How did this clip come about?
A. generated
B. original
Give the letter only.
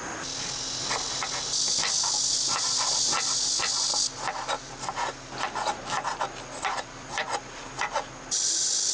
B